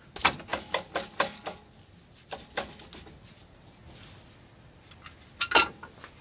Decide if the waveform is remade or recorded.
recorded